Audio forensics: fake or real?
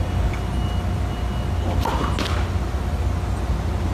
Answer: real